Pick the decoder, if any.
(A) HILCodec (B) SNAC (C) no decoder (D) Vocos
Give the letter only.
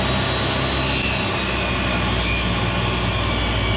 C